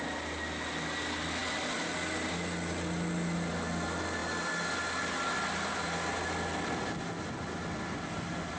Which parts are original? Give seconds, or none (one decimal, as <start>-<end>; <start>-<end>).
0.0-8.6